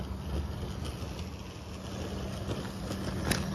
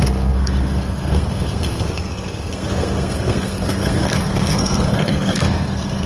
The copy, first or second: second